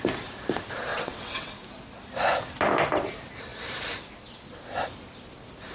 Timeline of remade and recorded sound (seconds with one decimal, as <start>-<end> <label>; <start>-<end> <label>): 0.0-0.9 recorded; 0.9-1.5 remade; 1.5-5.7 recorded